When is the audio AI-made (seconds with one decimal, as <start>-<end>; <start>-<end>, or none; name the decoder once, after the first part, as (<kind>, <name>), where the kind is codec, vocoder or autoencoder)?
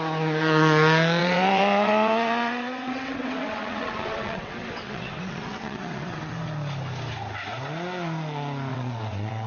1.2-6.3 (vocoder, WaveNeXt); 8.7-9.5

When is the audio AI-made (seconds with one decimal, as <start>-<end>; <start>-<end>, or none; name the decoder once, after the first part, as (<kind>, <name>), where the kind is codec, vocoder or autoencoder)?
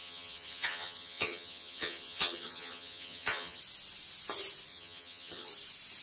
0.0-3.6 (vocoder, HiFi-GAN); 4.7-5.5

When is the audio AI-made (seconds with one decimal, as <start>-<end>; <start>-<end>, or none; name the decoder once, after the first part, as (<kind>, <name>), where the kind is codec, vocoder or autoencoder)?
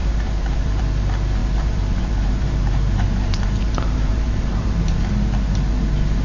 0.0-0.8 (vocoder, BigVGAN v2); 1.4-5.1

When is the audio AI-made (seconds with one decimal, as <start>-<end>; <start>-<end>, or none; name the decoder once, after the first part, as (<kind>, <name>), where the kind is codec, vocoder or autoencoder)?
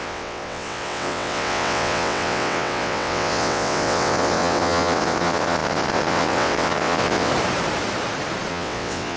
0.0-7.3 (vocoder, WaveNeXt); 8.5-9.2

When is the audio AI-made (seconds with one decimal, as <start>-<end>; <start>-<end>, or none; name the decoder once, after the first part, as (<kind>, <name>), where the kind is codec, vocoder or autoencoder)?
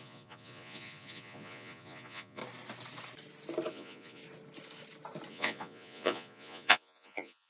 0.0-2.4 (vocoder, Vocos); 3.7-4.2; 5.3-7.5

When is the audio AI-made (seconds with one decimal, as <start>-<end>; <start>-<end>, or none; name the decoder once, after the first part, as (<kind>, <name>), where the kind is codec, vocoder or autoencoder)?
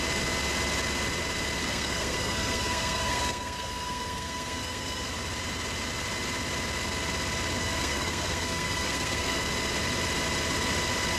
1.6-5.1 (codec, SNAC); 7.6-9.4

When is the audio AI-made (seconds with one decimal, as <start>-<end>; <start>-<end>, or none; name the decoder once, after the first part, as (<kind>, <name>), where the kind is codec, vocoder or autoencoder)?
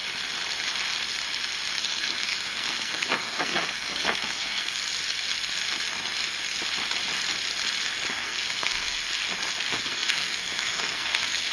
1.8-4.8 (codec, SNAC); 8.1-9.0; 9.7-11.5